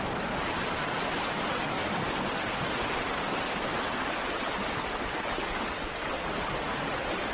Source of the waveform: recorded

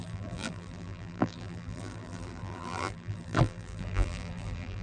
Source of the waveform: remade